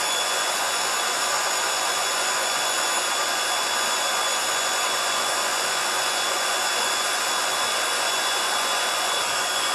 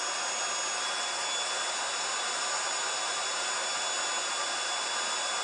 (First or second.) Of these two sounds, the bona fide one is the second